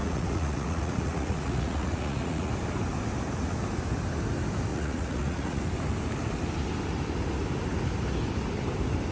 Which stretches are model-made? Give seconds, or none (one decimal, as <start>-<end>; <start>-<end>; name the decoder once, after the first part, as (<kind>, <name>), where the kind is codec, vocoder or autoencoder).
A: 0.0-2.5 (vocoder, Vocos); 4.7-5.6